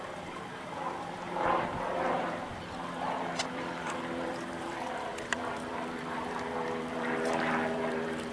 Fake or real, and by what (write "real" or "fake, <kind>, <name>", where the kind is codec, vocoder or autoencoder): fake, vocoder, BigVGAN v2